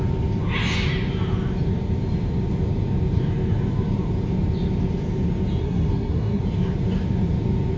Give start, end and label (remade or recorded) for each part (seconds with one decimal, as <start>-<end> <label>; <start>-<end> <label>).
0.0-5.6 recorded; 5.6-6.4 remade; 6.4-7.8 recorded